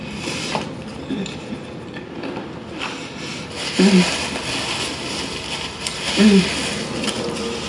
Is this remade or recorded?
recorded